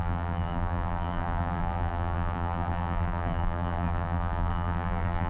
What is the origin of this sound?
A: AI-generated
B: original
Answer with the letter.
A